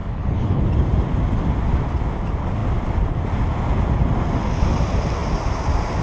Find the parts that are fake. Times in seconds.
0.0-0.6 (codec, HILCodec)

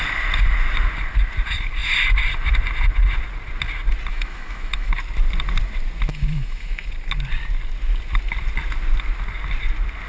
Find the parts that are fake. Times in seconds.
4.1-4.9 (autoencoder, DAC-VAE); 6.1-6.9